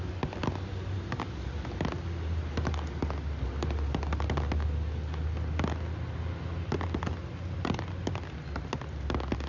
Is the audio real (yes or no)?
yes